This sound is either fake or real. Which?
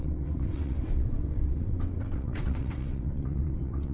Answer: fake